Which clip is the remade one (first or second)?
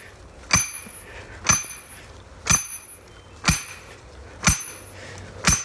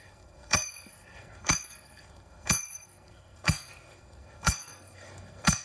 second